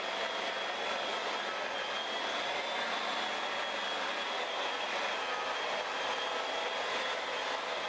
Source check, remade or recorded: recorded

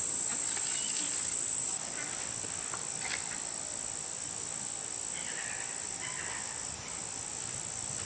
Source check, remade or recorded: recorded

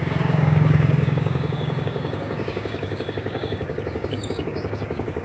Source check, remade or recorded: remade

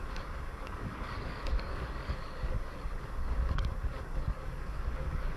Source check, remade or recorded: remade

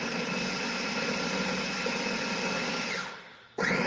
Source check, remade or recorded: recorded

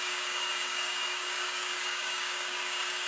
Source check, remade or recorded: remade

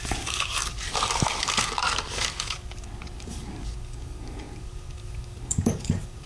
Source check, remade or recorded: remade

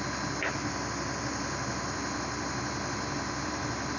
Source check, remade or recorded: recorded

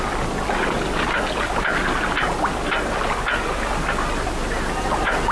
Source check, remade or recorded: recorded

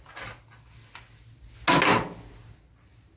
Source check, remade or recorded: recorded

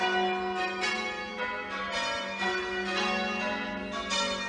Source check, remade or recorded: recorded